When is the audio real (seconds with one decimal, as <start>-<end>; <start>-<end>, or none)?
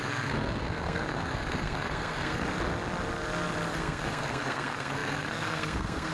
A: 2.4-3.7